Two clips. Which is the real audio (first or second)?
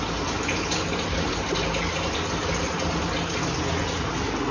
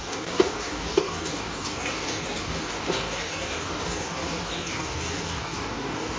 first